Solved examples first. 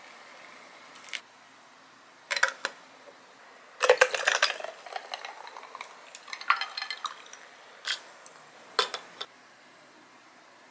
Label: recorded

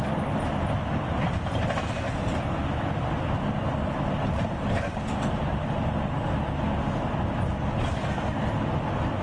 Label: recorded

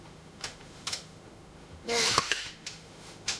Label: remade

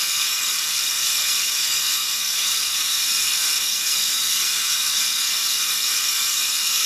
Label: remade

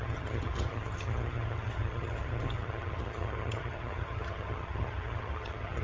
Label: remade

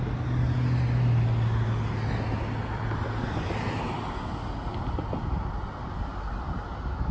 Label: recorded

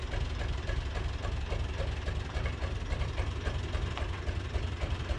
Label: recorded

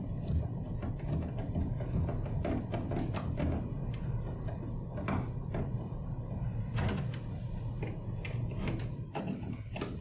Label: recorded